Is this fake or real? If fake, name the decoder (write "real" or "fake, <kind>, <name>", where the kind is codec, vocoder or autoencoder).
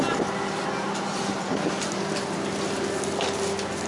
real